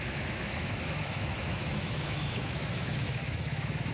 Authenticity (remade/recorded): remade